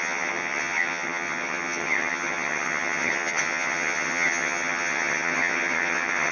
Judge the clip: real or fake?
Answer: fake